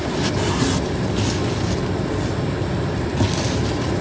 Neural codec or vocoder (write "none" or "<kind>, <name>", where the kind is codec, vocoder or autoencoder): none